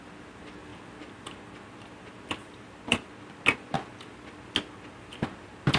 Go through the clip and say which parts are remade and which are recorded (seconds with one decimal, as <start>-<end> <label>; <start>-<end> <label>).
0.0-5.8 recorded